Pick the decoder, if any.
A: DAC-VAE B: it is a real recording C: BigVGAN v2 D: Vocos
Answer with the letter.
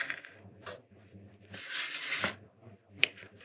C